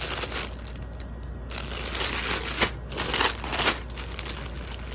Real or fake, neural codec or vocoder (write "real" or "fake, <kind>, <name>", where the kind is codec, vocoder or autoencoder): real